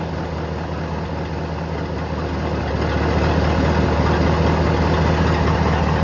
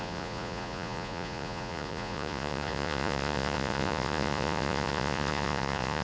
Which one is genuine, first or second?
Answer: first